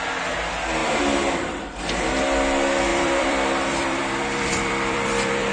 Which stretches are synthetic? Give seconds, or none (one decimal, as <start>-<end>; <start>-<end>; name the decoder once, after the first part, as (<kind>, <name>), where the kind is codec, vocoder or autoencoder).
2.9-5.5 (vocoder, BigVGAN v2)

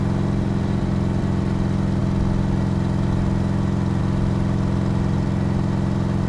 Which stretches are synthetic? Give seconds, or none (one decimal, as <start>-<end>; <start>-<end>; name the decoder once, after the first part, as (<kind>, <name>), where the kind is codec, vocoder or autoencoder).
none